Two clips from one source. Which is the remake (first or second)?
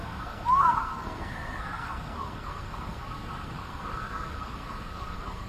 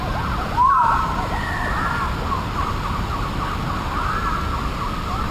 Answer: first